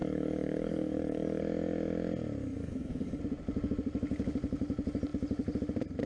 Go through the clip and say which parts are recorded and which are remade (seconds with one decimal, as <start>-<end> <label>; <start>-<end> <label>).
0.0-1.4 remade; 1.4-2.4 recorded; 2.4-3.2 remade; 3.2-6.1 recorded

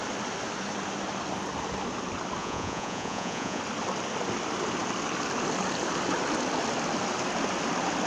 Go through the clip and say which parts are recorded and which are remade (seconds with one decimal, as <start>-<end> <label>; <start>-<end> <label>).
0.0-2.4 recorded; 2.4-3.6 remade; 3.6-8.1 recorded